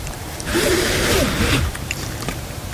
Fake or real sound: fake